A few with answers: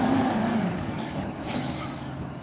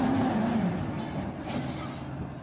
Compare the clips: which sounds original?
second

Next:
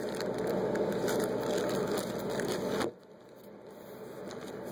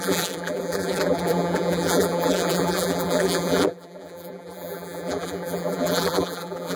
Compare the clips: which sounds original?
first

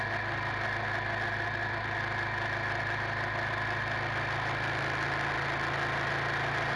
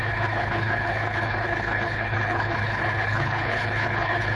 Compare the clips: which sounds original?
first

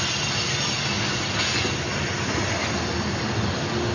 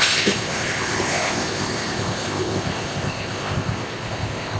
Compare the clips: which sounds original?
first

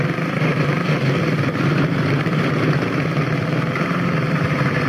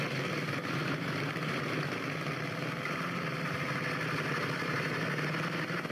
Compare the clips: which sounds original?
second